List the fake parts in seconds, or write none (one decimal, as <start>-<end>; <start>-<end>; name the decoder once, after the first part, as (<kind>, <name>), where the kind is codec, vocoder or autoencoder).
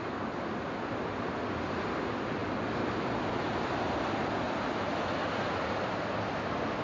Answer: none